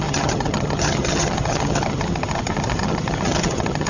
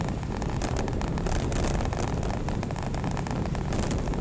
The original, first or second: second